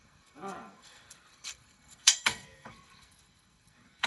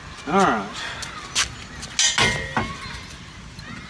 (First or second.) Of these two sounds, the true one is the second